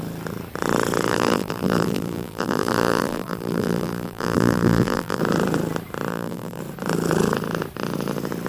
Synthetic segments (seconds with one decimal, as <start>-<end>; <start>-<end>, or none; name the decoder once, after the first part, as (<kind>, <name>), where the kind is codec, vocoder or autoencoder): 1.1-5.2 (vocoder, BigVGAN v2); 6.1-6.6

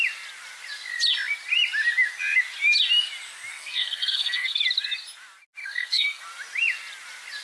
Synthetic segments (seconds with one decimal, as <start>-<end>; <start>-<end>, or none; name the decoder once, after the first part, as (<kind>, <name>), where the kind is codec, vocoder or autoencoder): 3.5-4.6 (codec, SNAC); 5.6-6.2